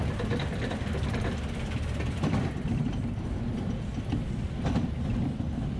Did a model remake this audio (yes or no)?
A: no